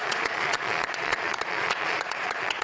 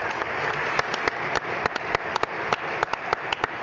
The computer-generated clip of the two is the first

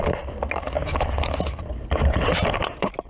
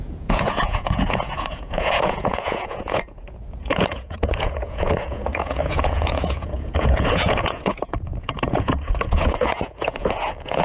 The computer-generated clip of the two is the second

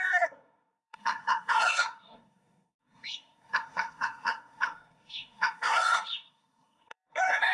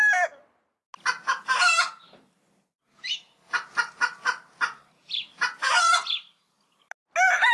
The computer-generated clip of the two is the first